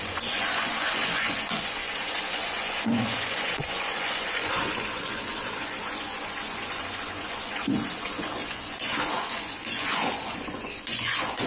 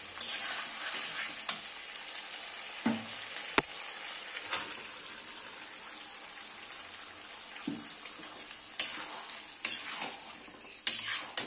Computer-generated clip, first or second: first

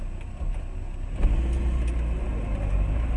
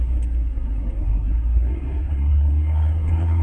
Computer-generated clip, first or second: second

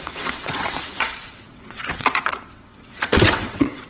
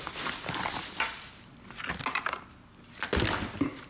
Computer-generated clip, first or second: first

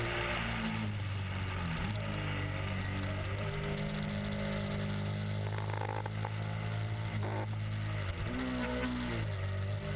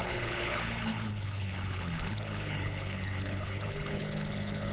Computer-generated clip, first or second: second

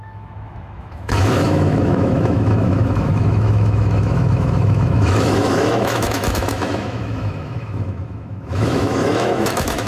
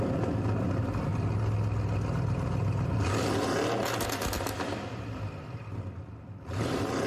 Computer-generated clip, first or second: first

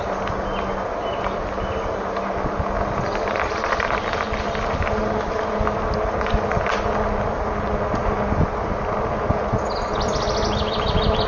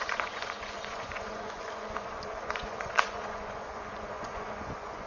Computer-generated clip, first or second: second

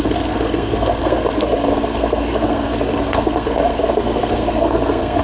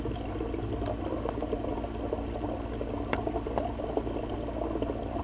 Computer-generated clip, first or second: first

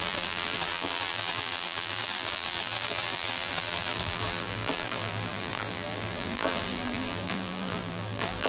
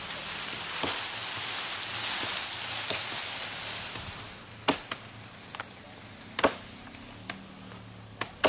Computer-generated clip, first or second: first